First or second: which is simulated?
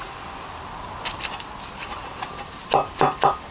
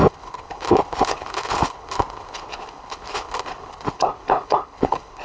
second